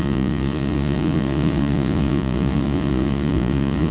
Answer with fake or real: fake